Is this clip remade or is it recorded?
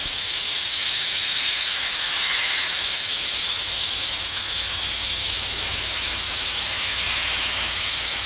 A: remade